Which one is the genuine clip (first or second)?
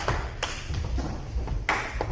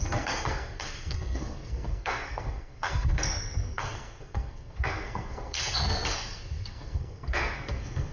first